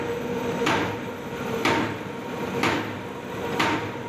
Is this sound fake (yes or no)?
yes